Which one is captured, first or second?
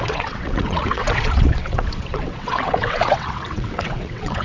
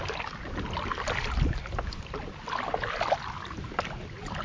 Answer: second